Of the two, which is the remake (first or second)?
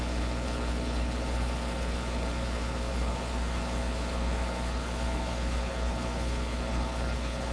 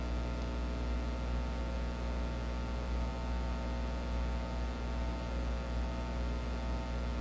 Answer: first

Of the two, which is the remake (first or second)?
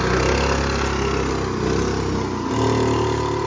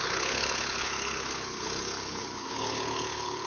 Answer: second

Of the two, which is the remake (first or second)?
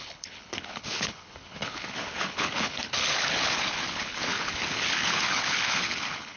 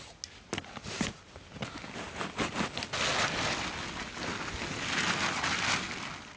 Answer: first